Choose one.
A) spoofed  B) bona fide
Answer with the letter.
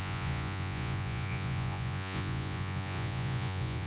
A